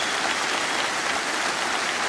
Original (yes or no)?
yes